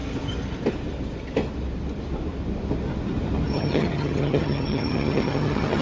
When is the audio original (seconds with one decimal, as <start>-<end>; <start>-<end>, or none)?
0.0-3.5